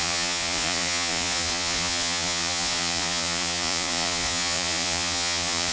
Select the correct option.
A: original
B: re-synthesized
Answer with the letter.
B